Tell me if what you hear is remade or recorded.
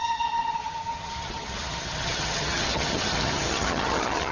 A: remade